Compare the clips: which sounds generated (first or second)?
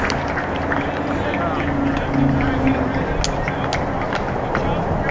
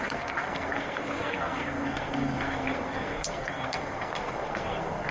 second